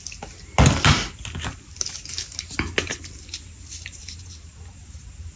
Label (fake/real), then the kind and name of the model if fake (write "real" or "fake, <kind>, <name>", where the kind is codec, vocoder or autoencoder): real